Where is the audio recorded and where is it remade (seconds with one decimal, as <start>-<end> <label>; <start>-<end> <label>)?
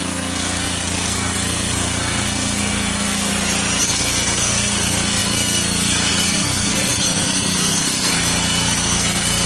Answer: 0.0-3.3 remade; 3.3-3.8 recorded; 3.8-9.5 remade